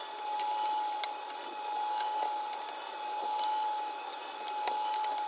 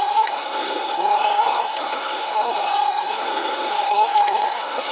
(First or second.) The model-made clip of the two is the second